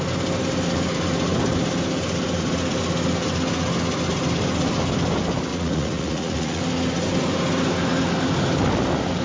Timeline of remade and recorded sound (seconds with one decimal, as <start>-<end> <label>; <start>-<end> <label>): 0.0-5.5 recorded; 5.5-6.6 remade; 6.6-9.2 recorded